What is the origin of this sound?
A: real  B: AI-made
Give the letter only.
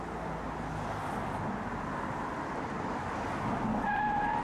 A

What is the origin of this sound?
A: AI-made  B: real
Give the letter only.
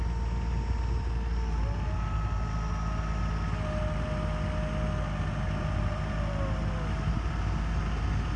B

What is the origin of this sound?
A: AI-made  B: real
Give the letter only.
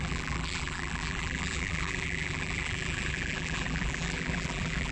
A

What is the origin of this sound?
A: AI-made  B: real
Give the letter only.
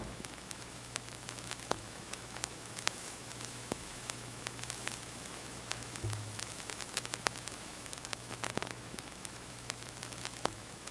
A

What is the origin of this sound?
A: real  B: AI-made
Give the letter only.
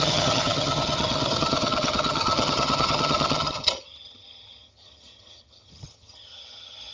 B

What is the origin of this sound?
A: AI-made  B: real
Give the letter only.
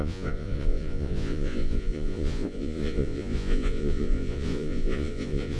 A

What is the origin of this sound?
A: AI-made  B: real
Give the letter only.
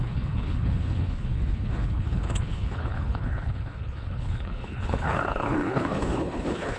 A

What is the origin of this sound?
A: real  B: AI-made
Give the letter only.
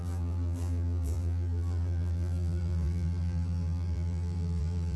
B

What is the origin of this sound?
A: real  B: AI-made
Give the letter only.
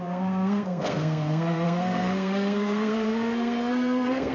B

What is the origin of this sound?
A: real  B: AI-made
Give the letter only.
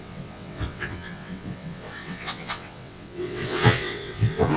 B